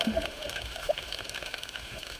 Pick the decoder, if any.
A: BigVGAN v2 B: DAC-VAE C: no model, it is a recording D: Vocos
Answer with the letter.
B